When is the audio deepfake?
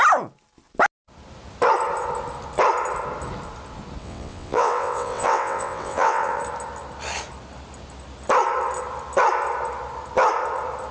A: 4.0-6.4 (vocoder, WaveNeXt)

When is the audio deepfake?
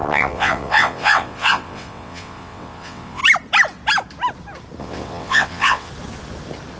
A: 0.0-3.2 (vocoder, WaveNeXt); 4.8-5.9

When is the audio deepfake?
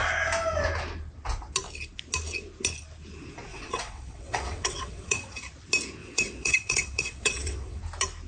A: 3.5-5.4 (vocoder, WaveNeXt); 6.0-7.8